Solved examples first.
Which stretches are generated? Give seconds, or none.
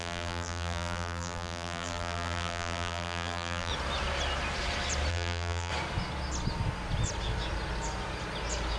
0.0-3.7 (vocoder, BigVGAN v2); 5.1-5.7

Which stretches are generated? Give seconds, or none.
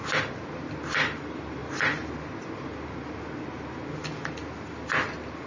none